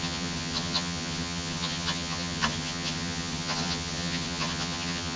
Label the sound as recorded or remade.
remade